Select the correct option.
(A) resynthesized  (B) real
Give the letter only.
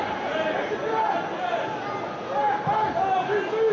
B